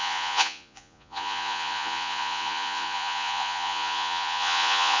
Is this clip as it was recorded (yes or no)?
no